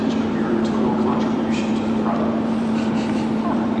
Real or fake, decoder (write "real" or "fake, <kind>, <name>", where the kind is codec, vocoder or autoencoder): fake, vocoder, BigVGAN v2